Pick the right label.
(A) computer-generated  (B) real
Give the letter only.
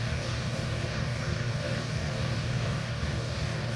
A